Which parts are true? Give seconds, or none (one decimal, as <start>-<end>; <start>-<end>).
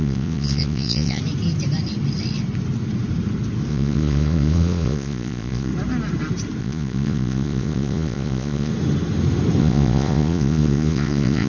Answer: 1.2-3.7; 5.7-6.6; 8.7-9.6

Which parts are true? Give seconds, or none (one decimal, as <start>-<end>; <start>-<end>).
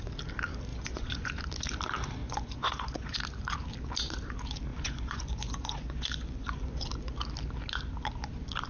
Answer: 0.0-0.7; 1.3-2.2; 3.2-4.7; 6.9-8.7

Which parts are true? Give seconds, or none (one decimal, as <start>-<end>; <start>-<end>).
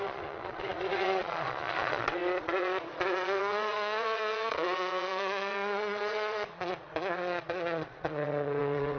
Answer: none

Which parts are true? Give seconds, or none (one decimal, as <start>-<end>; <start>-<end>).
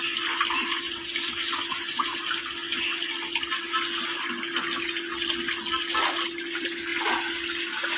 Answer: 0.0-8.0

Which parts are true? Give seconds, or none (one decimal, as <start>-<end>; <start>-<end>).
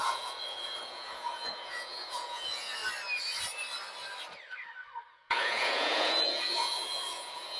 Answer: 2.8-5.1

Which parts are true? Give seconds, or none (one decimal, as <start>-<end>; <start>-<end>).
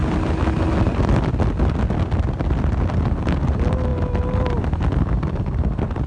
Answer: 0.0-6.1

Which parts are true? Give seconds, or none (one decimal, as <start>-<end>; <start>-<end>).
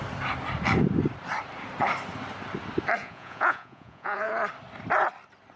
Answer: 0.0-3.0; 4.3-5.6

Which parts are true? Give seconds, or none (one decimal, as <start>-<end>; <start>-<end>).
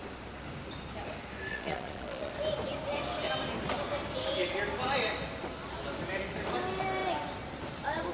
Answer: 0.0-1.5; 2.3-8.1